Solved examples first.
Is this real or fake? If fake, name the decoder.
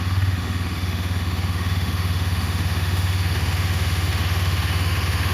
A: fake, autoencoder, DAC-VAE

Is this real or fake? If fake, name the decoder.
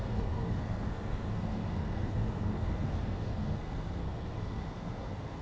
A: fake, codec, SNAC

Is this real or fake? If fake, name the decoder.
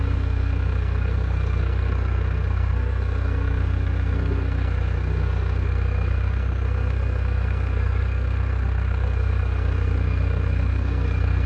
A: fake, codec, SNAC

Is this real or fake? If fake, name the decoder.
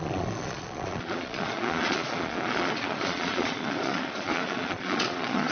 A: fake, vocoder, Vocos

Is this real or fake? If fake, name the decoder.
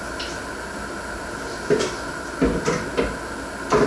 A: real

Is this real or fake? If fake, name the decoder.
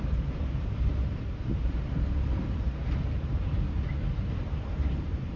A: fake, vocoder, BigVGAN v2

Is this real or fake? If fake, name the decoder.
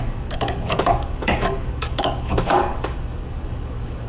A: fake, codec, DAC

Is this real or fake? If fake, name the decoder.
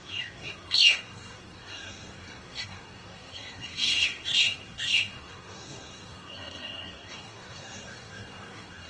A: fake, codec, SNAC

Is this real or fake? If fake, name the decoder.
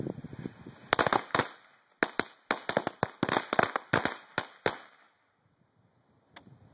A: real